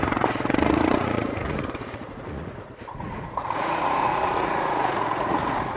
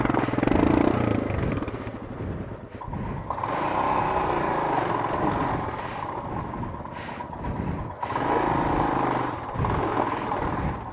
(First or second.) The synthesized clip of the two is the first